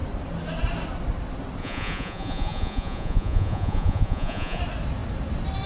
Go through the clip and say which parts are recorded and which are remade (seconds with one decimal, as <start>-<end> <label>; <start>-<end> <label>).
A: 0.0-1.6 recorded; 1.6-4.6 remade; 4.6-5.7 recorded